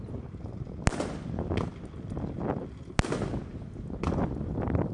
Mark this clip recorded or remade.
recorded